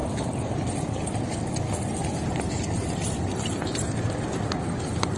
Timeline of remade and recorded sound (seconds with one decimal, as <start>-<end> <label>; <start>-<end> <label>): 0.0-0.8 remade; 0.8-2.0 recorded; 2.0-3.9 remade; 3.9-5.2 recorded